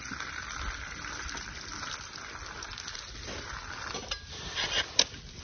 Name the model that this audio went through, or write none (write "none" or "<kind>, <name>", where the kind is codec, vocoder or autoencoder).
none